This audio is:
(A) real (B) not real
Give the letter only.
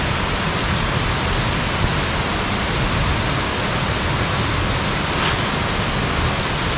A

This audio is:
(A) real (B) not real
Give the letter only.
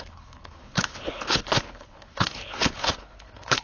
B